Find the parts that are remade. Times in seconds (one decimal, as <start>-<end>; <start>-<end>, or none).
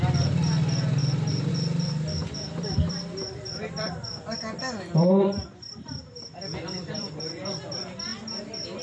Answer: 1.0-1.5; 2.2-7.1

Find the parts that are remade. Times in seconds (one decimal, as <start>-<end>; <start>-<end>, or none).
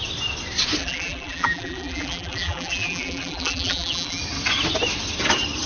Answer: 0.8-4.2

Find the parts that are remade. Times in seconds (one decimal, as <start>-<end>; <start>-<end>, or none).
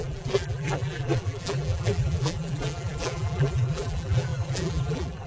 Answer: 0.0-5.3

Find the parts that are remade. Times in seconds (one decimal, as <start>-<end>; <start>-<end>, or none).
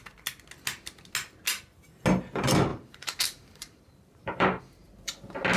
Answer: 2.7-4.6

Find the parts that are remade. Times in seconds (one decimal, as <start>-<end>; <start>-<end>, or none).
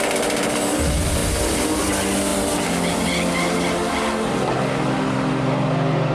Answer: 1.2-1.8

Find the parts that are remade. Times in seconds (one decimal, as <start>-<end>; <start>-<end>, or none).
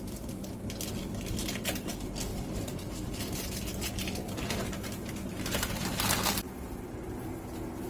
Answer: 2.3-7.0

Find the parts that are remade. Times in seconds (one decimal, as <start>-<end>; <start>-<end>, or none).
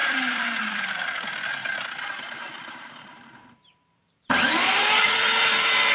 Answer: 0.0-0.9; 1.6-5.1